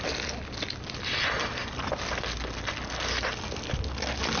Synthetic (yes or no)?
no